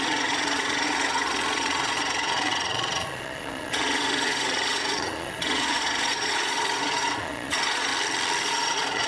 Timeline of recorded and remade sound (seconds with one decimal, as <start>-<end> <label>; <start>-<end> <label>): 0.0-7.9 remade; 7.9-8.4 recorded; 8.4-9.1 remade